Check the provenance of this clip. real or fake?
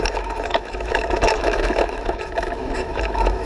fake